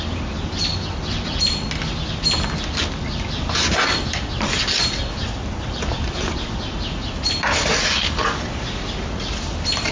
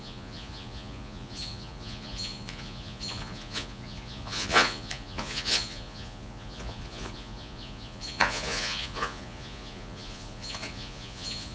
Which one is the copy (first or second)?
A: second